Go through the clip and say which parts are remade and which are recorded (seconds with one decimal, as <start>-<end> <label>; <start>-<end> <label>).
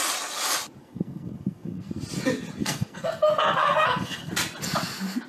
0.0-0.8 recorded; 0.8-2.0 remade; 2.0-2.6 recorded; 2.6-4.3 remade; 4.3-5.3 recorded